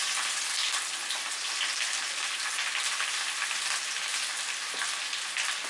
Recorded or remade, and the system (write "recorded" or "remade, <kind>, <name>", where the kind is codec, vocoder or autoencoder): recorded